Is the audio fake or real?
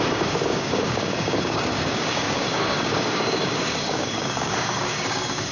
fake